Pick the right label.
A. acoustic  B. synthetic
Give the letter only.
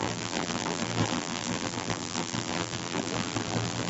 B